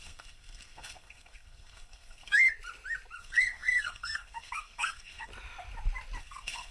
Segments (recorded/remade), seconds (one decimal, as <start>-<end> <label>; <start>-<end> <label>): 0.0-2.5 remade; 2.5-3.2 recorded; 3.2-5.3 remade; 5.3-6.2 recorded; 6.2-6.7 remade